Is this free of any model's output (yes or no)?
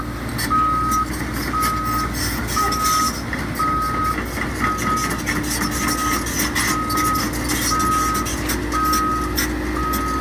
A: yes